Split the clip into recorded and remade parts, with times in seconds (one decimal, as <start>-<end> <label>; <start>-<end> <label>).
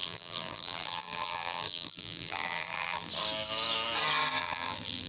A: 0.0-3.1 remade; 3.1-4.4 recorded; 4.4-5.1 remade